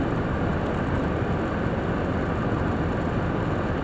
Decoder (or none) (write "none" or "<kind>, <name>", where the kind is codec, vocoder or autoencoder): none